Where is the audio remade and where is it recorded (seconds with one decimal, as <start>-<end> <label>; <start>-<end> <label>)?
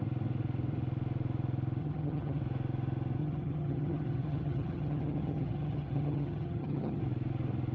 0.0-1.8 recorded; 1.8-2.4 remade; 2.4-3.2 recorded; 3.2-7.0 remade; 7.0-7.7 recorded